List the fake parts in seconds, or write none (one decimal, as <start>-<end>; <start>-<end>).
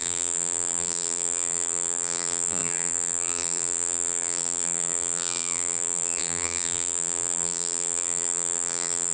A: 0.0-9.1